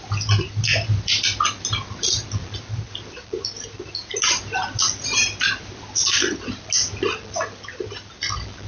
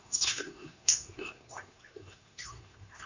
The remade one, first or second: second